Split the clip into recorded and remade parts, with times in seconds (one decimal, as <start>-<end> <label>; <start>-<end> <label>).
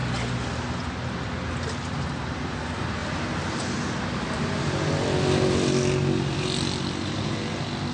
0.0-7.9 recorded